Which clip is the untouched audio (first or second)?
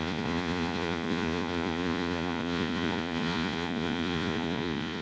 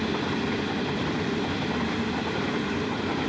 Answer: second